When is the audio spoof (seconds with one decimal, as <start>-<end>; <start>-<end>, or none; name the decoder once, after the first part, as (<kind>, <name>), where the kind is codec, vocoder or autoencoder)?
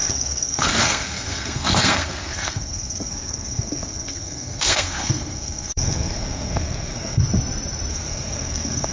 0.0-7.2 (codec, SNAC); 7.9-8.9